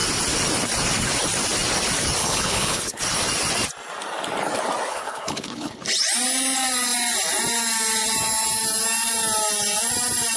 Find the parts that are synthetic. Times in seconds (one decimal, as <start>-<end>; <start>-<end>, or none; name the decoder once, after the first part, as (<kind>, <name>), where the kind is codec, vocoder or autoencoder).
2.2-3.0 (codec, HILCodec); 4.9-5.8